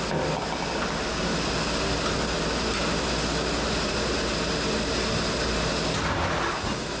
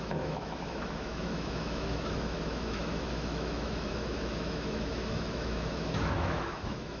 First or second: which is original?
first